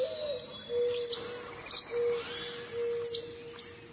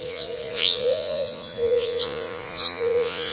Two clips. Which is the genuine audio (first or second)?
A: first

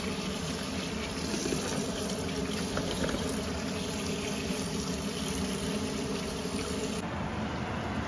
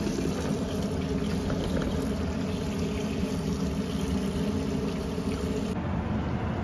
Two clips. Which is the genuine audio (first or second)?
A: second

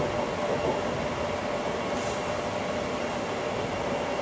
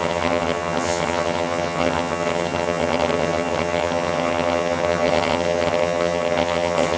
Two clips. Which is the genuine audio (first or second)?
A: first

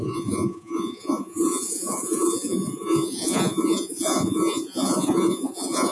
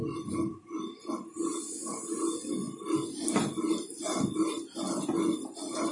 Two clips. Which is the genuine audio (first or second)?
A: second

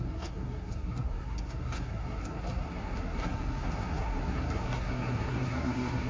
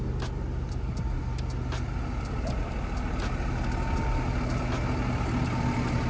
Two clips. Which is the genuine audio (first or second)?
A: second